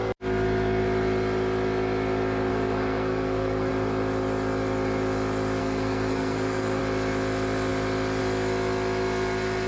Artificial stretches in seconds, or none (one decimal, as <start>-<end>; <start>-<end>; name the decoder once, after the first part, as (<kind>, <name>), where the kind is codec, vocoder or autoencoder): 2.5-3.7 (codec, SNAC); 5.6-6.8